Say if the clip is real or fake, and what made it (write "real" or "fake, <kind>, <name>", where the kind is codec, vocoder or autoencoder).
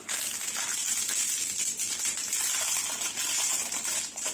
real